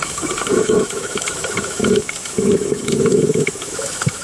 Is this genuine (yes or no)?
no